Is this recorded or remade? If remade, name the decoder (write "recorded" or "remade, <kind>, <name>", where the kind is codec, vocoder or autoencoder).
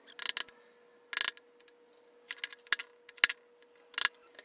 recorded